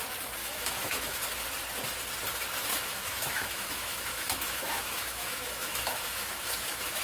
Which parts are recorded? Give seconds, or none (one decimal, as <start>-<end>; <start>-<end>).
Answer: 0.0-0.4; 1.2-2.7